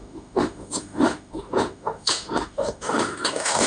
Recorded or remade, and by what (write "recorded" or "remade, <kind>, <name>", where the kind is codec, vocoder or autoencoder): remade, autoencoder, DAC-VAE